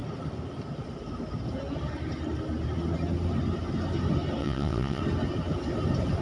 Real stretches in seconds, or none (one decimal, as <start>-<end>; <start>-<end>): 0.0-4.4; 5.0-6.2